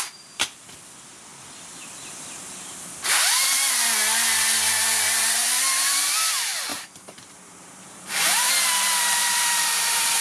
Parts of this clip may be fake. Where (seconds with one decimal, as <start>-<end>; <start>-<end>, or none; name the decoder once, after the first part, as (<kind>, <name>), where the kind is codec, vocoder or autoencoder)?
6.7-8.5 (vocoder, BigVGAN v2); 9.2-10.2